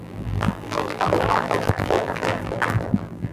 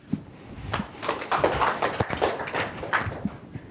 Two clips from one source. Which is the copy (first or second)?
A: first